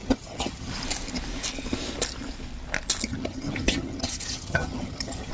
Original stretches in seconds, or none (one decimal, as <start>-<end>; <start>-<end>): 0.7-3.1